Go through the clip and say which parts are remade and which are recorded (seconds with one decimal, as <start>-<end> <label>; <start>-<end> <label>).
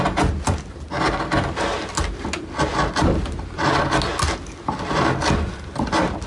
0.0-6.3 recorded